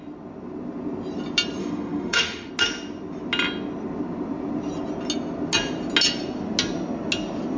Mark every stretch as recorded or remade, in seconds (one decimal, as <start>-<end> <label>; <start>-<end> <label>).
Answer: 0.0-1.6 recorded; 1.6-2.5 remade; 2.5-7.6 recorded